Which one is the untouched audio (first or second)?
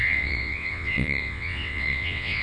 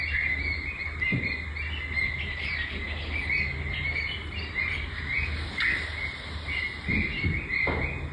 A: second